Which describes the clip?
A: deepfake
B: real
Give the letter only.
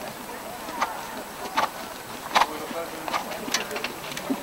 B